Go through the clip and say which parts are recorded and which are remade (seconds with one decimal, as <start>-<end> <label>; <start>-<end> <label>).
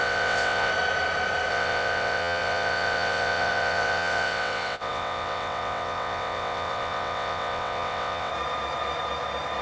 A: 0.0-0.7 remade; 0.7-1.5 recorded; 1.5-8.3 remade; 8.3-9.6 recorded